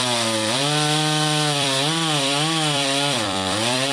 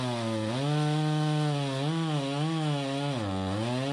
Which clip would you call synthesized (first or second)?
first